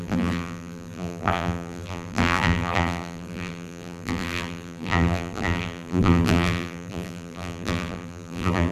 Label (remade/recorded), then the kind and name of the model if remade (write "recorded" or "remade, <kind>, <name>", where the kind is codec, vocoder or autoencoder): remade, vocoder, BigVGAN v2